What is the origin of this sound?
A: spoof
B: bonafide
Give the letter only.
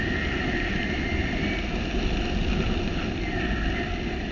B